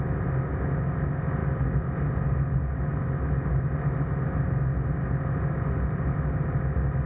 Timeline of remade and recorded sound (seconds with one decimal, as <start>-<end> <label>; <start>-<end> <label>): 0.0-7.1 recorded